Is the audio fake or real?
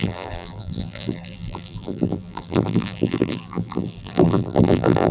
fake